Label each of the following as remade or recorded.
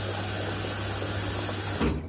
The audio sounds recorded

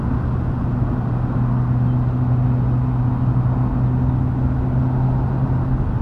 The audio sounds recorded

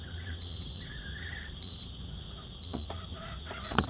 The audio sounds remade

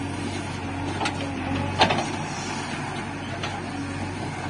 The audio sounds recorded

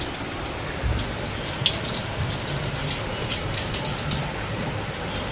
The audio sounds recorded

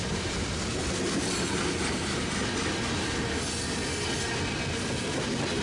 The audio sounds recorded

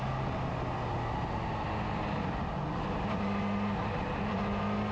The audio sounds recorded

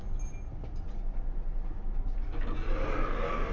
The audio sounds recorded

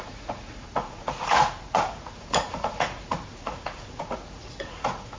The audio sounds remade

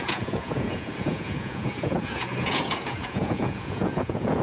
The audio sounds remade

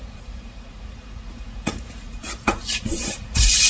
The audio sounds remade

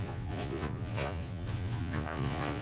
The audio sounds remade